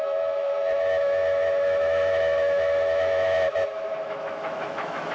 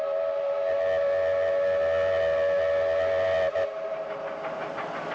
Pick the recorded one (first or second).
second